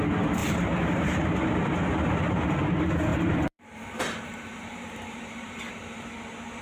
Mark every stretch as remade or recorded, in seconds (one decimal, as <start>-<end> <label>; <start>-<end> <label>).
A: 0.0-0.4 recorded; 0.4-1.2 remade; 1.2-3.1 recorded; 3.1-5.7 remade; 5.7-6.6 recorded